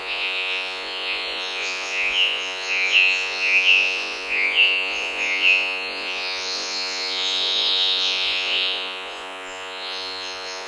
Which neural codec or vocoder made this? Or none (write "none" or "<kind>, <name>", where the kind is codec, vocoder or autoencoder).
vocoder, Vocos